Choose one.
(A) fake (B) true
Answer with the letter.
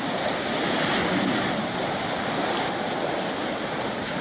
B